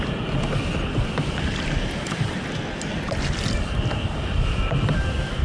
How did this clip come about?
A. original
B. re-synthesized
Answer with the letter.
A